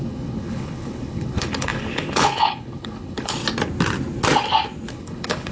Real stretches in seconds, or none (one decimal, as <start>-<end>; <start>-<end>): 3.4-4.9